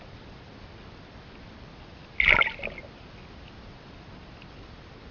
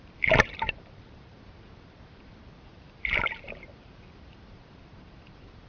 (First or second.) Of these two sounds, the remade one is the second